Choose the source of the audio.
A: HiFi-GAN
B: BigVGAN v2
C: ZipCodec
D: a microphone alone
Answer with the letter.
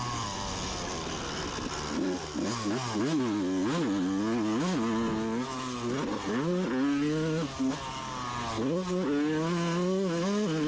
D